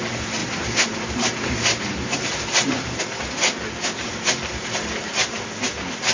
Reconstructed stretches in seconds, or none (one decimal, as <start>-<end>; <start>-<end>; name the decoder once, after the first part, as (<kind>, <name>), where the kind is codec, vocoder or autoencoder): 0.4-3.0 (vocoder, BigVGAN v2)